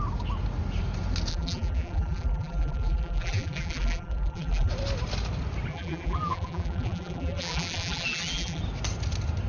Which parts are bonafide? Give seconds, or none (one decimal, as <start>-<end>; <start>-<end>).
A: 0.0-1.3; 4.7-5.7; 8.6-9.5